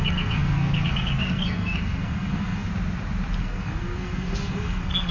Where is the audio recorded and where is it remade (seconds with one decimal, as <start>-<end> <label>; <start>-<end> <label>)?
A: 0.0-2.7 remade; 2.7-3.4 recorded; 3.4-5.1 remade